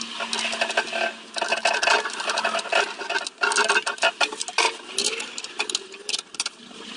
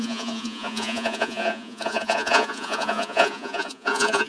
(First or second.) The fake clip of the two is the second